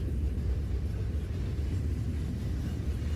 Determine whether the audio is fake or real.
real